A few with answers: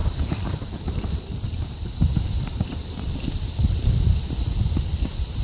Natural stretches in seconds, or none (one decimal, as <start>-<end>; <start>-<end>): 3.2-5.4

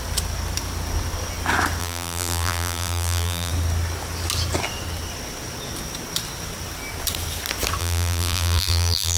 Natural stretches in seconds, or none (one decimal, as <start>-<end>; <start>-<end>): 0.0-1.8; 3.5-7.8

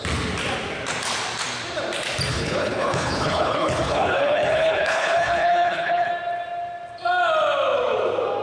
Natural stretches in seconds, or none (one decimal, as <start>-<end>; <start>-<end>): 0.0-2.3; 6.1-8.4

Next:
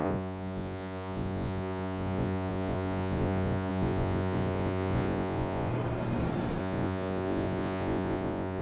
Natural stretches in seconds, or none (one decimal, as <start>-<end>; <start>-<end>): 5.7-6.6

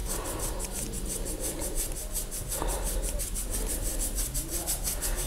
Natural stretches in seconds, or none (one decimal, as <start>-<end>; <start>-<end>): 0.0-5.3

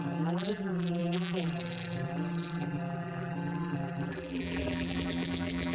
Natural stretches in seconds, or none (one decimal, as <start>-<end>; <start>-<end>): none